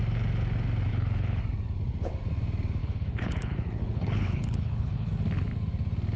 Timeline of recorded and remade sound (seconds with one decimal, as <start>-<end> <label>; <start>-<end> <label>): 0.0-0.9 recorded; 0.9-1.4 remade; 1.4-2.8 recorded; 2.8-5.1 remade; 5.1-6.2 recorded

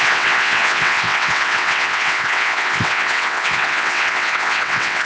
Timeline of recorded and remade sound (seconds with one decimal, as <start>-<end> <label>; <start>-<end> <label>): 0.0-5.1 remade